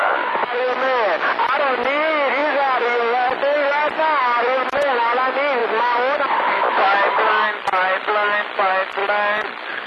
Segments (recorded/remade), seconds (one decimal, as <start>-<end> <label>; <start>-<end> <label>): 0.0-9.9 recorded